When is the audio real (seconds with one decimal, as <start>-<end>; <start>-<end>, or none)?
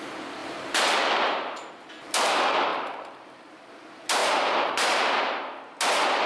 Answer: 0.0-0.4; 1.7-2.7; 3.7-4.2; 4.7-6.3